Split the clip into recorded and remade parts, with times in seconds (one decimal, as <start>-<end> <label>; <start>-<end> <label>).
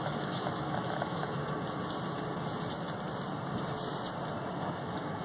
0.0-1.4 remade; 1.4-4.5 recorded; 4.5-5.2 remade